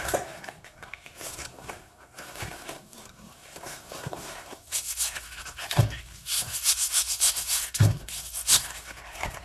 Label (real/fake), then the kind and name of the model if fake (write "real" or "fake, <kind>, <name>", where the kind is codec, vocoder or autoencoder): fake, codec, SNAC